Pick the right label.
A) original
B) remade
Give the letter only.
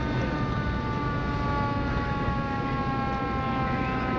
A